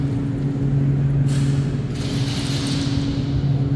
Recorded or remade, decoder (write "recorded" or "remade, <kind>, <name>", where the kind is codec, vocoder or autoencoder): recorded